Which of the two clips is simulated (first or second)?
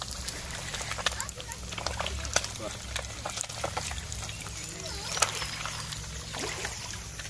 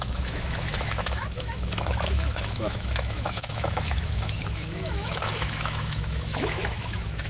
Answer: second